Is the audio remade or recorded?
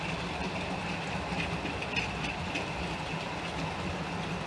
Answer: recorded